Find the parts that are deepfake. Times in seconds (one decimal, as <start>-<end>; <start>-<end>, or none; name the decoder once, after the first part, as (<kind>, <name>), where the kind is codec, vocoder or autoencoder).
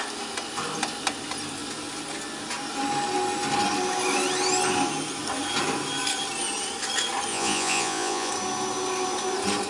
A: 7.3-8.3 (vocoder, Vocos)